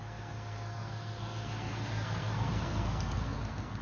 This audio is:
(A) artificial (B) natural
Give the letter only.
A